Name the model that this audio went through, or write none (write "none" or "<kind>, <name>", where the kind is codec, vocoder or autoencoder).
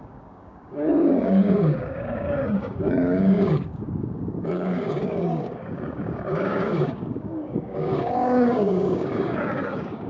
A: codec, DAC